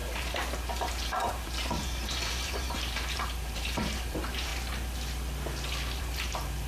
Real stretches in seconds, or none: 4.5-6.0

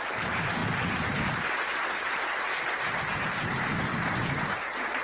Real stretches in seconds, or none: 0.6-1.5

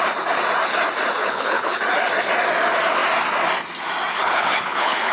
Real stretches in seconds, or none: 0.0-1.2; 1.8-4.1

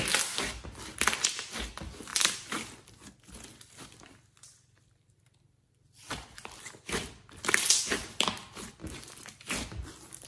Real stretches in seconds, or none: 0.0-10.3

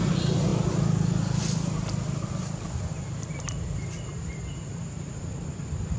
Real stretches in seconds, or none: 0.0-0.5; 3.3-4.1; 4.6-6.0